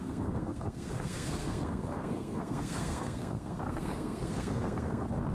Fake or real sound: fake